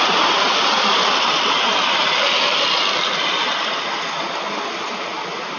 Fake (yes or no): no